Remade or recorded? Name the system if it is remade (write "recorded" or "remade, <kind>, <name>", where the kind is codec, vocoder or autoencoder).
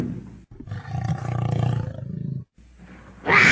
recorded